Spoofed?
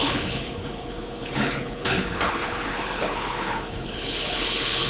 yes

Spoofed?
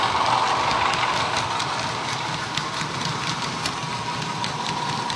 no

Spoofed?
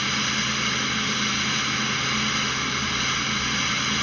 no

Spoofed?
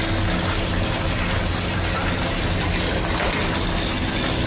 no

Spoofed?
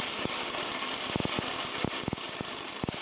no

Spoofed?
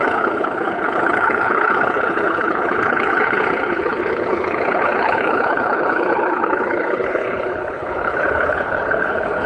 yes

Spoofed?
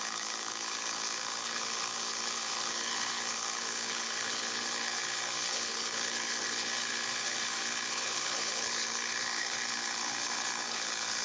yes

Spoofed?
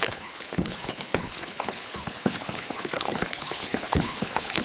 yes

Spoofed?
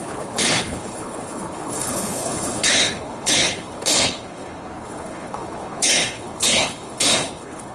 yes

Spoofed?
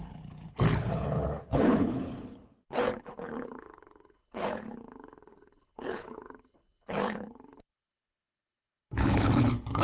yes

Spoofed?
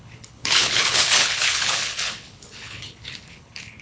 yes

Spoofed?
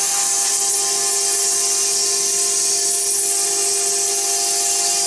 no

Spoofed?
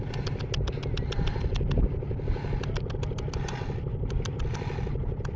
no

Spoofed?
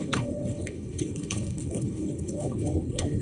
yes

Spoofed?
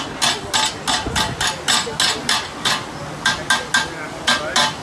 no